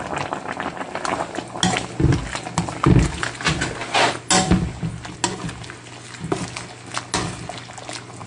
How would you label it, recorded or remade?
recorded